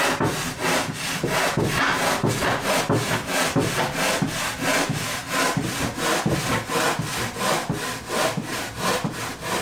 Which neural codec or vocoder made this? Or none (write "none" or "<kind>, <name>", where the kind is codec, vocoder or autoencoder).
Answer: none